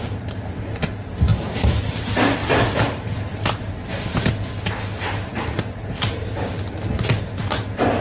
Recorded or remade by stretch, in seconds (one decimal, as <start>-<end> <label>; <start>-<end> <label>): 0.0-1.3 recorded; 1.3-2.0 remade; 2.0-2.4 recorded; 2.4-3.7 remade; 3.7-8.0 recorded